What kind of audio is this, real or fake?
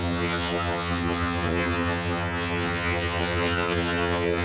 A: fake